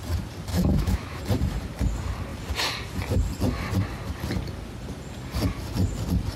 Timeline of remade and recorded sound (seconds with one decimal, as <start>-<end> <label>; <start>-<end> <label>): 0.0-0.5 recorded; 0.5-1.2 remade; 1.2-6.4 recorded